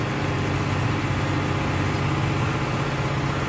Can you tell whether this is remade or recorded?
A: recorded